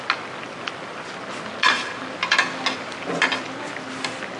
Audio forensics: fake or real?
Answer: real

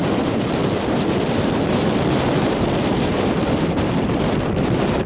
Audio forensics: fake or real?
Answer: real